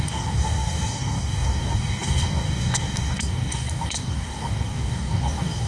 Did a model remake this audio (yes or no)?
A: yes